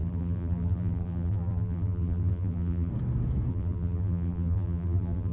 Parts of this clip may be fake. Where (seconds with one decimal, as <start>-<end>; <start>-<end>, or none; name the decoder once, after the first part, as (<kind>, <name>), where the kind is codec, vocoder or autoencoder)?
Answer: 0.0-2.9 (vocoder, BigVGAN v2); 3.5-5.3

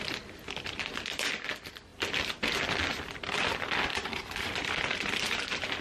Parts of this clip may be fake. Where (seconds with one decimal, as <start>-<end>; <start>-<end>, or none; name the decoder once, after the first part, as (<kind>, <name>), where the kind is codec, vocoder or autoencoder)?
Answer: 3.9-4.5 (vocoder, BigVGAN v2)